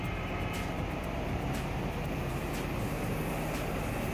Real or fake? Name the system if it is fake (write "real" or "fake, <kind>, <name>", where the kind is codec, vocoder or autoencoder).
real